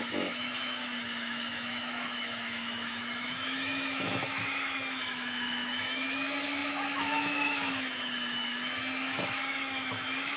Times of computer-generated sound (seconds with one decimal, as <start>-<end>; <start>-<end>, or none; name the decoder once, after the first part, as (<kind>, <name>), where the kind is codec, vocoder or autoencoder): 0.0-10.4 (autoencoder, DAC-VAE)